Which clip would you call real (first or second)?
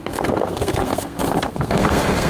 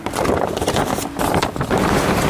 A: second